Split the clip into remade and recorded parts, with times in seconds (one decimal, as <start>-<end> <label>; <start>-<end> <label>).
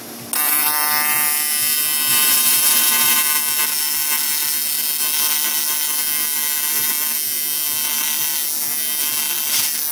0.0-2.1 recorded; 2.1-3.2 remade; 3.2-9.9 recorded